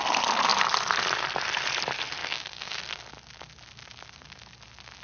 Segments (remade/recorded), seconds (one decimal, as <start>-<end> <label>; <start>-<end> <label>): 0.0-2.2 recorded; 2.2-2.8 remade; 2.8-5.0 recorded

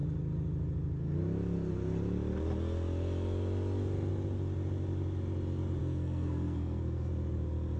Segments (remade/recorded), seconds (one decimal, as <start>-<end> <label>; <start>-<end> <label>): 0.0-5.8 recorded; 5.8-7.1 remade; 7.1-7.8 recorded

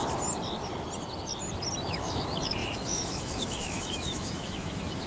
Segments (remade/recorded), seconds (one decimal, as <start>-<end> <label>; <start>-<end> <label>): 0.0-1.9 recorded; 1.9-5.1 remade

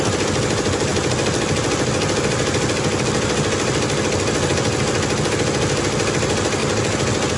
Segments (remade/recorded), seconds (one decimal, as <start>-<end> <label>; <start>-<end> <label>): 0.0-7.4 recorded

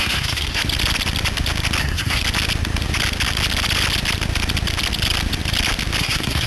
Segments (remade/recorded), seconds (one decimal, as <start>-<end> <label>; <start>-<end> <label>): 0.0-0.6 remade; 0.6-1.8 recorded; 1.8-2.2 remade; 2.2-6.0 recorded; 6.0-6.5 remade

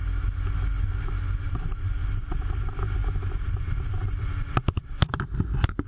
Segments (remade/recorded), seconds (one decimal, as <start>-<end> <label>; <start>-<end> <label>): 0.0-2.0 recorded; 2.0-4.2 remade; 4.2-5.9 recorded